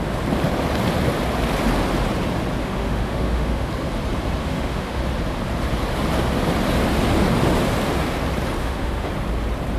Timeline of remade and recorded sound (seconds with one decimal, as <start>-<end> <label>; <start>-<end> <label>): 0.0-2.6 recorded; 2.6-3.7 remade; 3.7-4.4 recorded; 4.4-5.0 remade; 5.0-8.6 recorded; 8.6-9.1 remade; 9.1-9.8 recorded